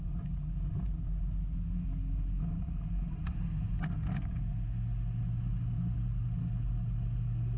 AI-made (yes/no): no